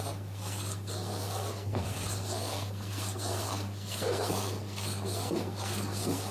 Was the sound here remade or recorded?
remade